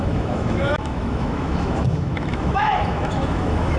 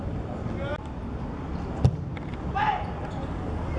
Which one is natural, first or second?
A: second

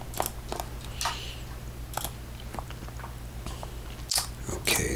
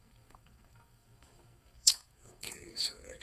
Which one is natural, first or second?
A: first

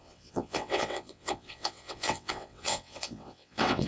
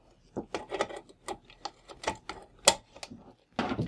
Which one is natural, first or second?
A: second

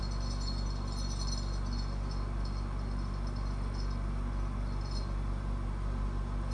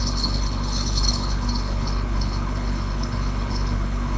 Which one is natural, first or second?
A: first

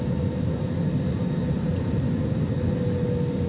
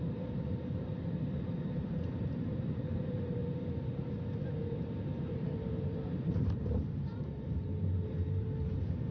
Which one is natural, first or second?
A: first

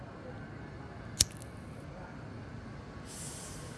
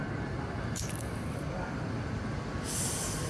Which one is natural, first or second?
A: first